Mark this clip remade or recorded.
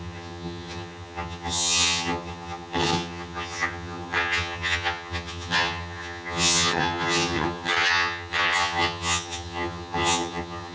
remade